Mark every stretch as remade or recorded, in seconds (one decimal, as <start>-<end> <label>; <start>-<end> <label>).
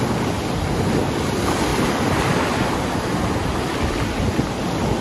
0.0-1.7 recorded; 1.7-3.6 remade; 3.6-5.0 recorded